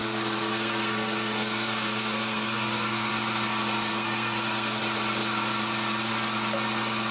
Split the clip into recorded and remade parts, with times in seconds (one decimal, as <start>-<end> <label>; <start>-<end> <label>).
0.0-3.1 remade; 3.1-3.9 recorded; 3.9-4.8 remade; 4.8-7.1 recorded